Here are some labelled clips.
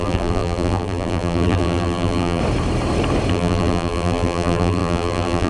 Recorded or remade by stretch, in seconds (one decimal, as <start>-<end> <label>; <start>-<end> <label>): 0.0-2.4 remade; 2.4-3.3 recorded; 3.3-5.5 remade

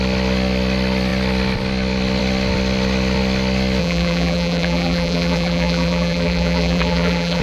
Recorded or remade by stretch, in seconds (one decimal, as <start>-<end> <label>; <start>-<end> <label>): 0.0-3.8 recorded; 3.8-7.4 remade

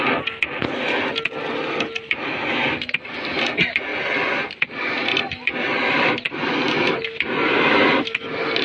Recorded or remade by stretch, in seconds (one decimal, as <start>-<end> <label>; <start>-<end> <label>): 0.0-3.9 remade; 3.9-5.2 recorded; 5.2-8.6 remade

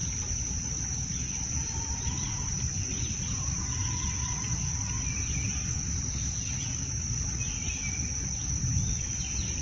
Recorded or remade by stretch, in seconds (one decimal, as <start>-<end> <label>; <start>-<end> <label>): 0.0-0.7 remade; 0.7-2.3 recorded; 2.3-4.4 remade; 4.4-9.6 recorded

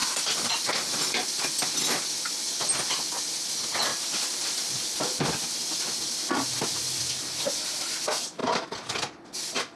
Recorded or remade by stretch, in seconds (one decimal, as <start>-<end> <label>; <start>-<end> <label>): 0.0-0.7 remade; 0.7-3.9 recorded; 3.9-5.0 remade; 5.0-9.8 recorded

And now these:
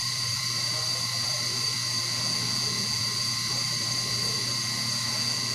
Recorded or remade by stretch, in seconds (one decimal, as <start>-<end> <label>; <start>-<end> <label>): 0.0-2.0 remade; 2.0-3.0 recorded; 3.0-5.1 remade; 5.1-5.5 recorded